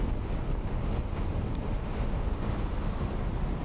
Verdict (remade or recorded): recorded